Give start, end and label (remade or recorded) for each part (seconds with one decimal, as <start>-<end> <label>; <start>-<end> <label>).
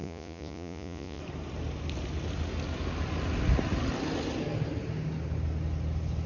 0.0-1.2 remade; 1.2-6.3 recorded